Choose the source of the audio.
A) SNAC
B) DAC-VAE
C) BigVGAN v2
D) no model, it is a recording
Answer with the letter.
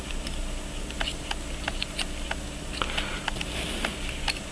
D